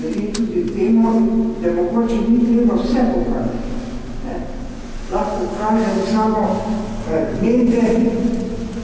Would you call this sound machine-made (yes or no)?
no